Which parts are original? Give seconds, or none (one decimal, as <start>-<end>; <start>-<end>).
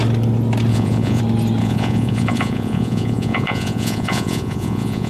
0.0-0.7; 1.2-1.6